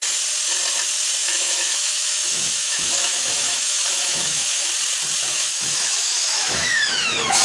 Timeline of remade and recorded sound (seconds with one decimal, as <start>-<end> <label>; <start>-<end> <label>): 0.0-1.2 recorded; 1.2-4.7 remade; 4.7-5.3 recorded; 5.3-7.4 remade